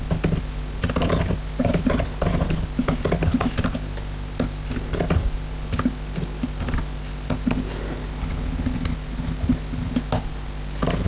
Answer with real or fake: real